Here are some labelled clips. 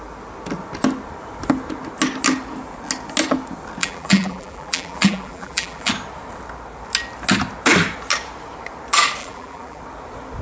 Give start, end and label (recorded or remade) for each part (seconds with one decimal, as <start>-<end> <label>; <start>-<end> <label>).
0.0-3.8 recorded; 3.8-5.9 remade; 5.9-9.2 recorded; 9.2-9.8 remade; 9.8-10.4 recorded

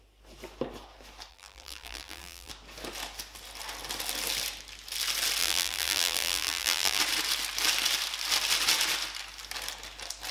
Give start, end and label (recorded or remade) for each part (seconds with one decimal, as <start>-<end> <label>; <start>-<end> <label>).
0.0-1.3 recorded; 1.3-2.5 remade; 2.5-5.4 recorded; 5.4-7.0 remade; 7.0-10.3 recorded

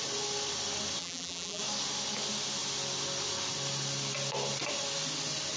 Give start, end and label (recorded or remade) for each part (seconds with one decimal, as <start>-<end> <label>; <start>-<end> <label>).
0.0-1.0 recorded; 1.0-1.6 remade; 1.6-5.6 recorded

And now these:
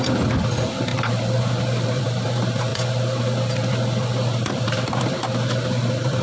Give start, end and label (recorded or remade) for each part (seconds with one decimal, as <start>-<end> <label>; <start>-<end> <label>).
0.0-0.9 recorded; 0.9-2.0 remade; 2.0-6.2 recorded